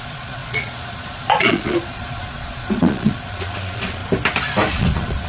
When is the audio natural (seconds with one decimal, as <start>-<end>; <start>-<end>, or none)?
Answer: 4.0-4.7